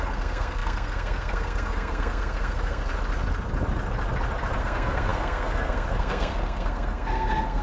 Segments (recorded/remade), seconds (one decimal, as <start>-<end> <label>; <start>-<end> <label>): 0.0-2.9 remade; 2.9-4.6 recorded; 4.6-7.6 remade